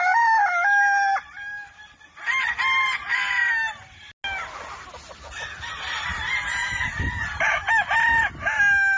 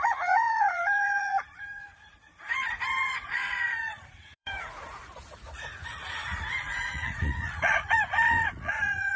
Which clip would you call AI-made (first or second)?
second